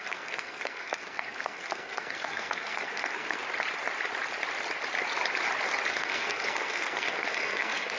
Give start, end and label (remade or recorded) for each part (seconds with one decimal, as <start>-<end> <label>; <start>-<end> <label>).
0.0-3.4 remade; 3.4-5.9 recorded; 5.9-8.0 remade